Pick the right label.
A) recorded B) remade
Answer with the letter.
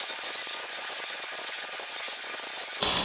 B